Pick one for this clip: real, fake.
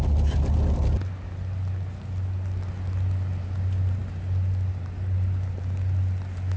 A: real